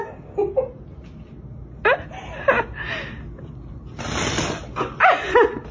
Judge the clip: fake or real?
real